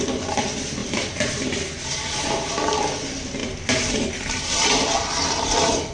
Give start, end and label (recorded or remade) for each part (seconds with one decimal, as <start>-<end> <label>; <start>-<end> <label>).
0.0-0.8 recorded; 0.8-1.5 remade; 1.5-3.4 recorded; 3.4-4.1 remade; 4.1-5.9 recorded